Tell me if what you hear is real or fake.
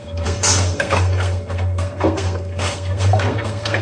fake